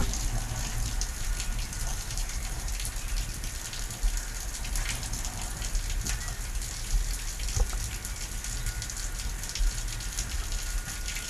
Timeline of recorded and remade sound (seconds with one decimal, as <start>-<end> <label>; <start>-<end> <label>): 0.0-1.9 recorded; 1.9-2.7 remade; 2.7-11.3 recorded